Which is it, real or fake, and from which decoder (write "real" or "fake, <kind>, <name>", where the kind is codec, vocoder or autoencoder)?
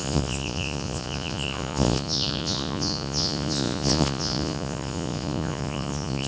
fake, vocoder, Vocos